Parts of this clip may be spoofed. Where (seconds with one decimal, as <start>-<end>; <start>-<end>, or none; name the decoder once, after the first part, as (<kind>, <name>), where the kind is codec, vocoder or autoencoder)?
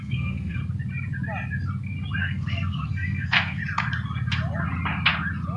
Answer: 0.0-0.6 (codec, SNAC); 2.2-3.6